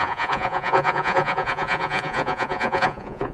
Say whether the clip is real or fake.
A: fake